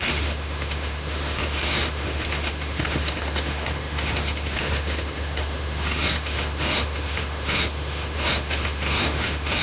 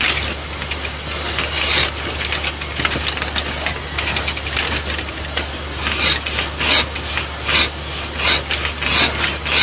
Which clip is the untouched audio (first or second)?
second